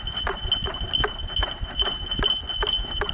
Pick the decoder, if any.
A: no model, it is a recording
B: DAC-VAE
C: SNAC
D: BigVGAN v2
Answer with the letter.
A